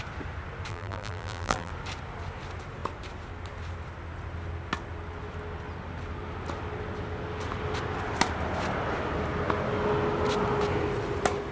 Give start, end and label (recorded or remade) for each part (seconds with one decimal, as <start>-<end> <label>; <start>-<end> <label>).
0.0-0.7 recorded; 0.7-1.7 remade; 1.7-11.5 recorded